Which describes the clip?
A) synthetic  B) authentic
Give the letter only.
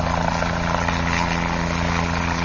B